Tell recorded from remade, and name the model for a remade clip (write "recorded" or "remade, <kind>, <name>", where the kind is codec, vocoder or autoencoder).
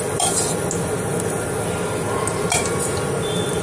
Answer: recorded